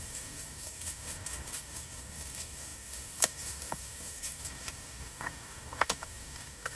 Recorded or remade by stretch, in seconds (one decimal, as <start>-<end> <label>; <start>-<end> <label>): 0.0-6.8 remade